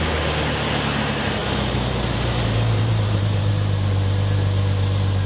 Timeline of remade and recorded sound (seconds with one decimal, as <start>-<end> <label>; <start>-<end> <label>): 0.0-1.4 recorded; 1.4-3.5 remade; 3.5-5.3 recorded